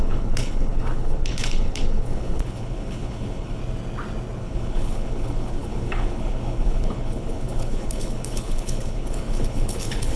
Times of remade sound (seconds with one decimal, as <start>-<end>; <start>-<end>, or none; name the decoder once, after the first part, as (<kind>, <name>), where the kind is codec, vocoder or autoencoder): 0.0-3.6 (codec, HILCodec); 4.4-10.2